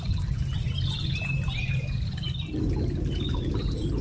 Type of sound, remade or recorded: recorded